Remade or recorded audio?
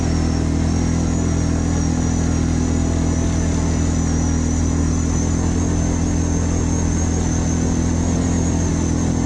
recorded